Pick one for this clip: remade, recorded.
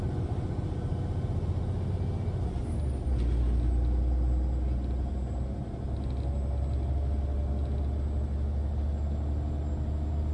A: recorded